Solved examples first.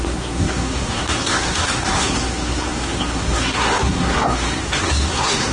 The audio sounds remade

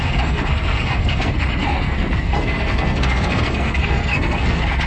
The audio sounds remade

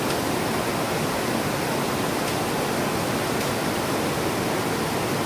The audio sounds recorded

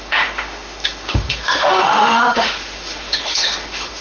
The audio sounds remade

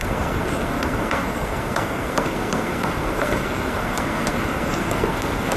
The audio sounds remade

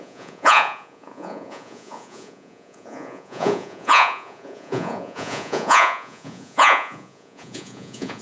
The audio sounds remade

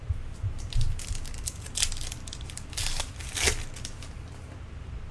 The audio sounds recorded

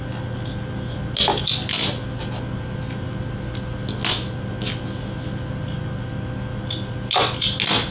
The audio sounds recorded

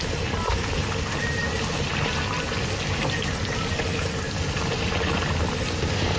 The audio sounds recorded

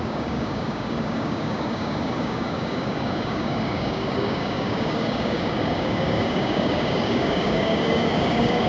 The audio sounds remade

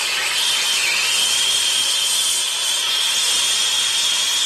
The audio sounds recorded